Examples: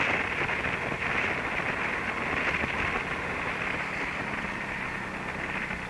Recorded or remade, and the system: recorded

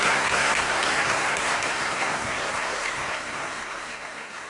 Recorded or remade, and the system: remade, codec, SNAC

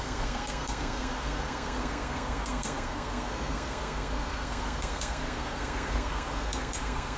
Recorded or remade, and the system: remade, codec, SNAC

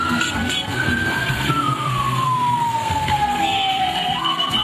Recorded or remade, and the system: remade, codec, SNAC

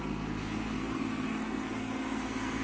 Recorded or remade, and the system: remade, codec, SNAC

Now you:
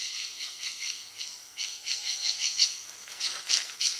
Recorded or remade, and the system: remade, codec, SNAC